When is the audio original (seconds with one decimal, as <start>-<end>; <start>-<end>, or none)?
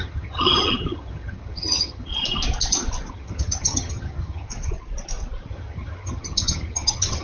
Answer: 2.1-3.1; 4.5-5.5